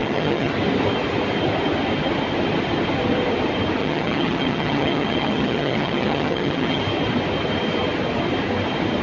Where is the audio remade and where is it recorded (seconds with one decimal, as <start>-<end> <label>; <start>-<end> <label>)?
0.0-0.5 remade; 0.5-3.8 recorded; 3.8-6.8 remade; 6.8-9.0 recorded